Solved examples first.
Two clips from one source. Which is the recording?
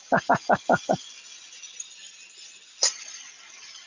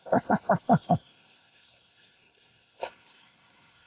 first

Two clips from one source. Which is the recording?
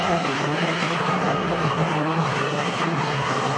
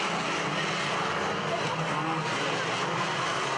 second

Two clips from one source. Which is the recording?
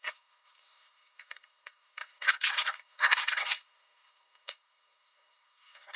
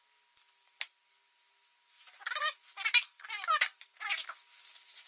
second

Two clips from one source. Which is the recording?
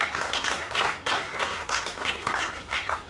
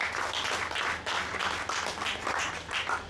second